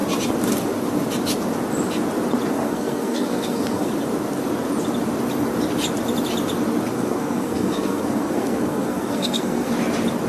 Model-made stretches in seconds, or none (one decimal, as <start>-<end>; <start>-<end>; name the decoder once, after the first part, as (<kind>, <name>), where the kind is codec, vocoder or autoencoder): 2.5-3.9 (codec, SNAC); 6.9-9.7